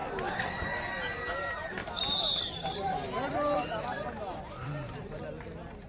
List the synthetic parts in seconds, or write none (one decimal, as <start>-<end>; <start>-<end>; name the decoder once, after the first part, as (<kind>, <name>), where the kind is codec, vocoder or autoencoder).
1.8-5.2 (vocoder, BigVGAN v2)